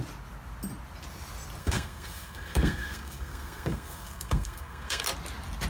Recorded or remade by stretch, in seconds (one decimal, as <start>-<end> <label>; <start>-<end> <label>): 0.0-1.6 recorded; 1.6-5.0 remade; 5.0-5.7 recorded

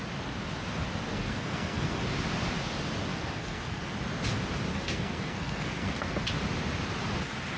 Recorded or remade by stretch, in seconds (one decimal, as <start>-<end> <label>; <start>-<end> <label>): 0.0-1.1 recorded; 1.1-2.0 remade; 2.0-3.1 recorded; 3.1-3.8 remade; 3.8-4.7 recorded; 4.7-6.3 remade; 6.3-7.6 recorded

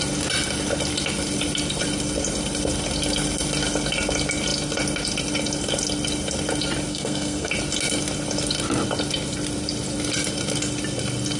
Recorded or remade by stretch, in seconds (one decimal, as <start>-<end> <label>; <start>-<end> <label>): 0.0-6.9 recorded; 6.9-7.5 remade; 7.5-11.4 recorded

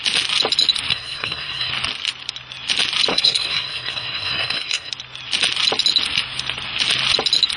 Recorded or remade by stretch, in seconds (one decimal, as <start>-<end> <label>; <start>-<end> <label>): 0.0-0.9 recorded; 0.9-1.7 remade; 1.7-3.1 recorded; 3.1-4.9 remade; 4.9-7.6 recorded

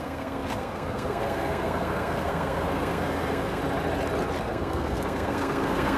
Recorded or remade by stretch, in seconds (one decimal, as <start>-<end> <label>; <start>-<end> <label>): 0.0-3.6 remade; 3.6-4.4 recorded; 4.4-6.0 remade

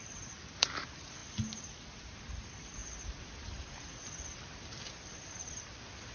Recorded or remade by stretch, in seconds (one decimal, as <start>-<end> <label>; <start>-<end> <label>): 0.0-1.2 remade; 1.2-2.4 recorded; 2.4-6.1 remade

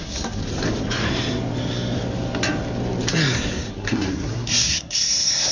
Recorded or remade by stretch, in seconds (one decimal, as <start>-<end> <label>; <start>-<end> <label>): 0.0-0.4 remade; 0.4-3.7 recorded; 3.7-5.5 remade